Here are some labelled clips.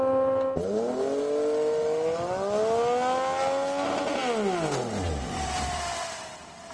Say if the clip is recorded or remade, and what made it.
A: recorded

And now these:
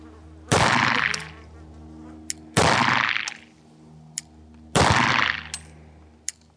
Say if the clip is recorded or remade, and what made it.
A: recorded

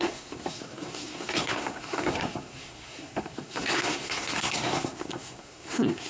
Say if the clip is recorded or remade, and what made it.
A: remade, codec, SNAC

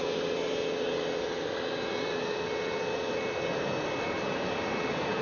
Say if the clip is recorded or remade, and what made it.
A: recorded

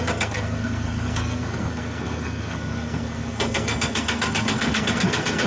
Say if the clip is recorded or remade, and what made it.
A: remade, codec, SNAC